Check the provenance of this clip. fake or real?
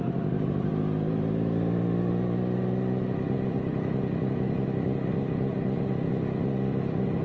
real